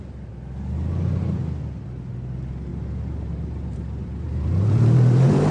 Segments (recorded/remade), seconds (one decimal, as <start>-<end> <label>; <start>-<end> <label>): 0.0-2.7 recorded; 2.7-5.5 remade